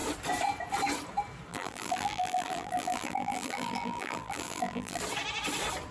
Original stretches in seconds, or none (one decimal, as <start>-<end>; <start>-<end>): 0.0-1.5; 5.0-5.9

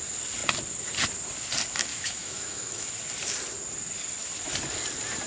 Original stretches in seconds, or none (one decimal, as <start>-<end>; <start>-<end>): 0.0-1.9; 2.9-5.3

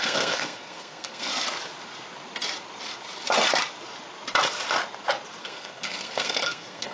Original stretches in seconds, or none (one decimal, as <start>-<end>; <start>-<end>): 1.3-5.4

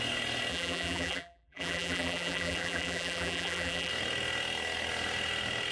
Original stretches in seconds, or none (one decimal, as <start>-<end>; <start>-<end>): 0.0-0.5; 3.9-5.7

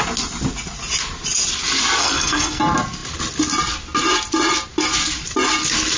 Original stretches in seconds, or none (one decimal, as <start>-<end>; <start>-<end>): 0.0-2.0; 2.6-6.0